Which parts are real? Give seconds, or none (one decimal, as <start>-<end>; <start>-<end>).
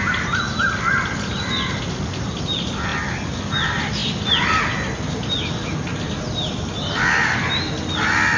0.0-8.4